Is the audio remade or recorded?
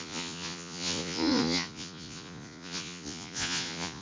remade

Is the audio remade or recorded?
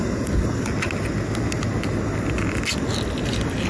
recorded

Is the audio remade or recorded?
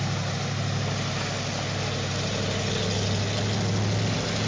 recorded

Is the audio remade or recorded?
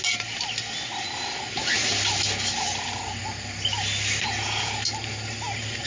recorded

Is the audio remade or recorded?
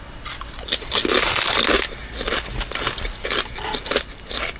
recorded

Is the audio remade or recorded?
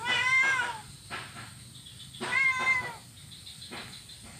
recorded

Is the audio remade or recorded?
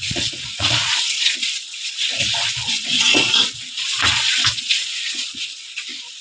remade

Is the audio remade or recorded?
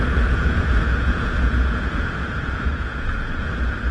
remade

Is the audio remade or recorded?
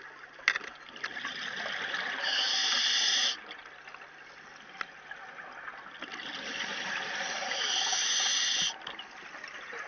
recorded